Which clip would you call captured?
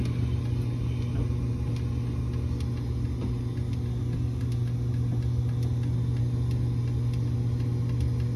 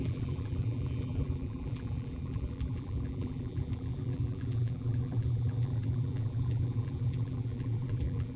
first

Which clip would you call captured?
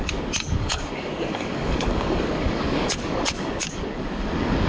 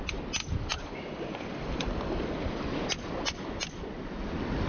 second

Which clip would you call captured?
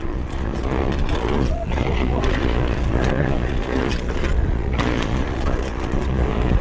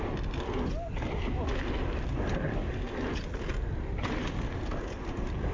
second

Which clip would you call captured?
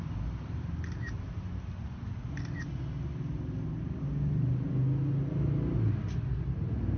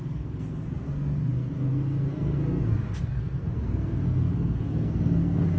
first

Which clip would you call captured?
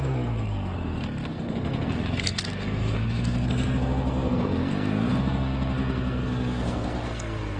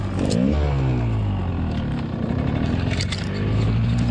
second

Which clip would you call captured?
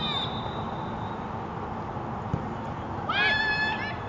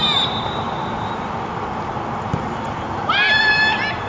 first